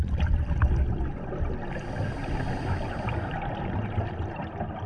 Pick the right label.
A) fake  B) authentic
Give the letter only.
B